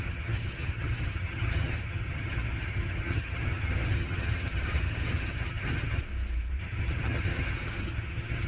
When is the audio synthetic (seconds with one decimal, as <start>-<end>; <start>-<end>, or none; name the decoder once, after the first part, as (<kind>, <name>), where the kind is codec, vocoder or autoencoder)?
0.0-6.0 (vocoder, HiFi-GAN); 6.6-8.5